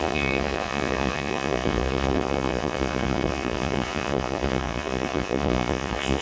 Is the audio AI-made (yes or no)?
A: yes